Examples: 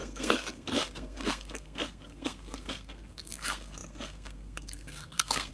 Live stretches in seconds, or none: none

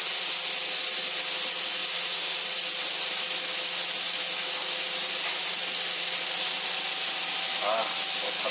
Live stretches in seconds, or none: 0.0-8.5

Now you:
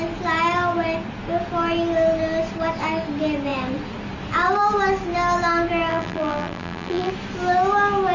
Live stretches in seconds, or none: 0.0-5.9; 7.1-8.1

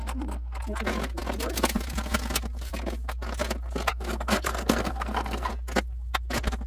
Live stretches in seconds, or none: 0.6-3.9; 5.5-6.7

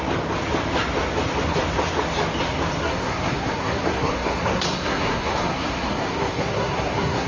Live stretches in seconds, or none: 0.0-2.8